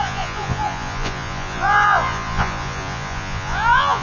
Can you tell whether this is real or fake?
fake